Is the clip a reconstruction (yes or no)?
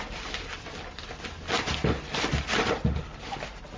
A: no